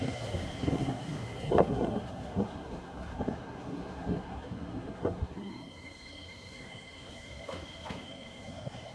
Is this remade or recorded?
remade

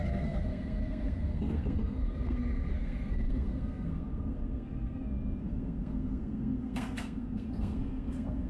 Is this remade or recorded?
remade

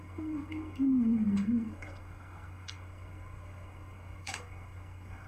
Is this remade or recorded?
remade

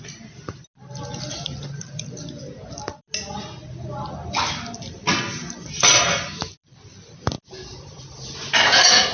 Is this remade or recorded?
recorded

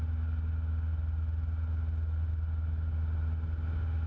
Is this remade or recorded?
recorded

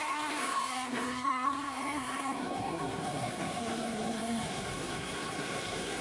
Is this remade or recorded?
remade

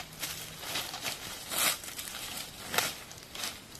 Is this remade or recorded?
recorded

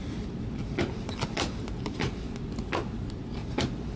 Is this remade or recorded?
recorded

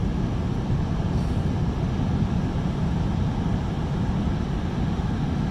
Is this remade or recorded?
recorded